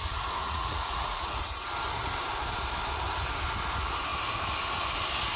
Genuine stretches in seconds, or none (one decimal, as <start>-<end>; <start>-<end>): 0.0-0.4; 1.4-5.4